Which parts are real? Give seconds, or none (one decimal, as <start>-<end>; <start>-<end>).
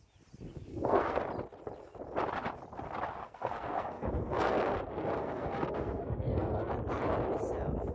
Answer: 0.0-0.7; 1.2-3.2; 6.7-7.9